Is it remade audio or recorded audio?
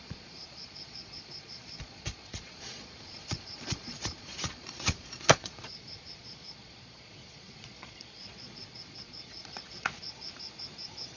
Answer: remade